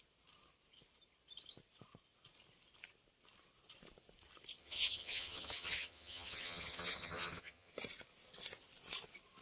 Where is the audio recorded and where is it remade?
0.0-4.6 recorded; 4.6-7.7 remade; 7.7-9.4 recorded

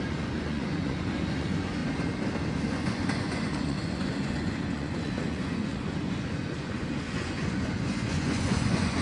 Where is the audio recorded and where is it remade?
0.0-1.8 remade; 1.8-2.6 recorded; 2.6-9.0 remade